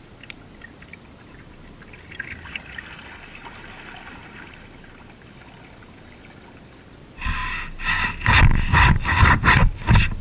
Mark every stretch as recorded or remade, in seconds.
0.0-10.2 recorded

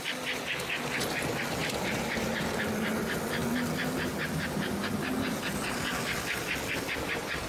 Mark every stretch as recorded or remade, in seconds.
0.0-1.6 recorded; 1.6-2.6 remade; 2.6-7.5 recorded

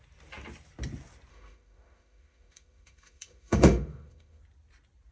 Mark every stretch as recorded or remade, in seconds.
0.0-1.3 recorded; 1.3-4.4 remade; 4.4-5.1 recorded

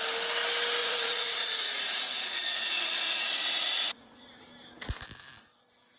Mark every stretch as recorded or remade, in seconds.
0.0-0.8 recorded; 0.8-4.4 remade; 4.4-6.0 recorded

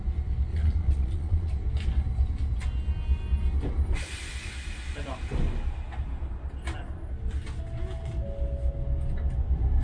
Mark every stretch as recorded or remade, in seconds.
0.0-0.5 recorded; 0.5-1.5 remade; 1.5-9.8 recorded

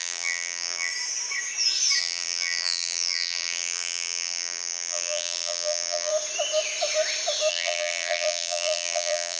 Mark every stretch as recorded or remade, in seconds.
0.0-0.9 remade; 0.9-2.0 recorded; 2.0-6.1 remade; 6.1-7.5 recorded; 7.5-9.4 remade

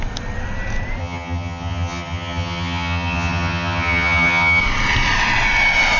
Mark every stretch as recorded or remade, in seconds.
0.0-1.0 recorded; 1.0-4.6 remade; 4.6-6.0 recorded